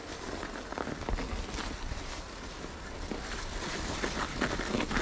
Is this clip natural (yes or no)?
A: yes